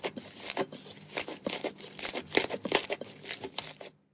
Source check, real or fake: real